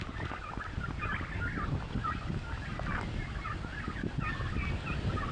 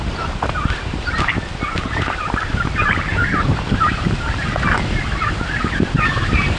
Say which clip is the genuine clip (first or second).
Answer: first